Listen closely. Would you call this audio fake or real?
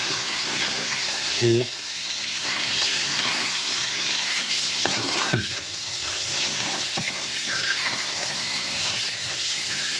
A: fake